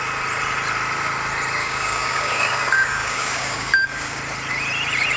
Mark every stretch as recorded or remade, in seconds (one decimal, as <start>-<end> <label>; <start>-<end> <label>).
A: 0.0-1.6 recorded; 1.6-4.2 remade; 4.2-5.2 recorded